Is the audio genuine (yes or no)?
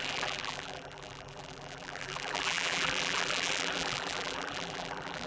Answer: no